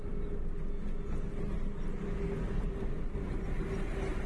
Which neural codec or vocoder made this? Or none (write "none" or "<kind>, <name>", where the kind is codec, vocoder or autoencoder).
none